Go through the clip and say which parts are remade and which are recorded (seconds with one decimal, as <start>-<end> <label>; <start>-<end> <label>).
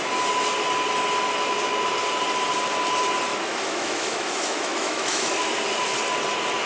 0.0-3.3 recorded; 3.3-5.5 remade; 5.5-6.7 recorded